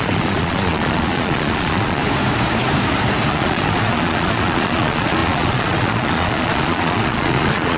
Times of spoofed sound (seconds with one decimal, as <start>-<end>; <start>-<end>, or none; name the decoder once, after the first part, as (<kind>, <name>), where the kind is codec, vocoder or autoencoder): 0.0-2.0 (vocoder, Vocos); 3.3-7.8